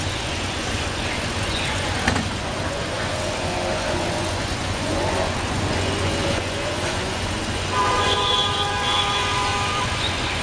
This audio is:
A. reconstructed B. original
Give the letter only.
A